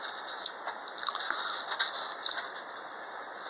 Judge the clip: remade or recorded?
recorded